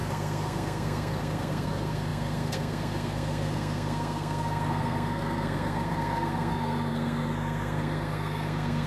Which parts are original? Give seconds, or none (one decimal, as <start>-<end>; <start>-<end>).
none